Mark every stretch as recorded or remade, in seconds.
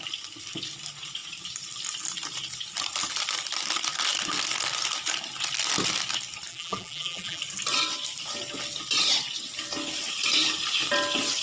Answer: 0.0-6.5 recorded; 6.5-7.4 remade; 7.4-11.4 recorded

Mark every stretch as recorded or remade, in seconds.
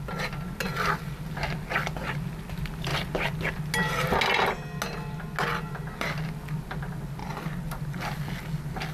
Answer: 0.0-8.9 recorded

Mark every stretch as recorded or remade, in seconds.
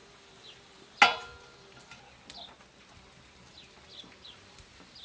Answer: 0.0-5.0 recorded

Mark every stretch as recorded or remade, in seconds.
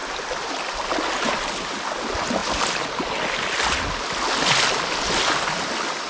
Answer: 0.0-6.1 recorded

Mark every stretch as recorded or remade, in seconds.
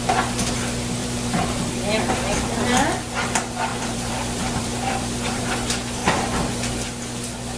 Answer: 0.0-1.0 recorded; 1.0-2.0 remade; 2.0-3.7 recorded; 3.7-5.4 remade; 5.4-7.6 recorded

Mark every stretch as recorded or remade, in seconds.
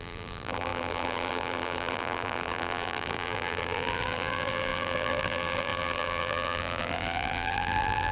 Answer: 0.0-8.1 remade